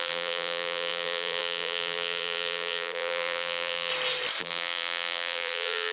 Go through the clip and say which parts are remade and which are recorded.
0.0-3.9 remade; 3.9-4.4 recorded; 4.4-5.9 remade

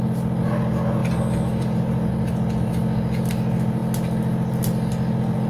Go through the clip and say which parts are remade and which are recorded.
0.0-5.5 recorded